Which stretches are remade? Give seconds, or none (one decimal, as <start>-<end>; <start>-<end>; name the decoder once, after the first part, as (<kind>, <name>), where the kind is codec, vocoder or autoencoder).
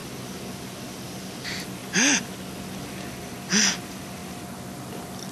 none